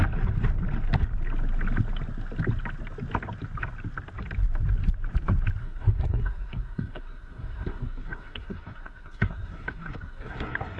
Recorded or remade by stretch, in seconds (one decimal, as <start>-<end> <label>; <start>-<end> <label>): 0.0-5.6 recorded; 5.6-10.8 remade